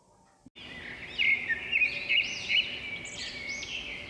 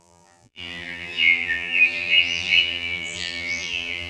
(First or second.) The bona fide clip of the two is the first